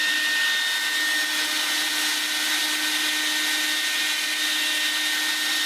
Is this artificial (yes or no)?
no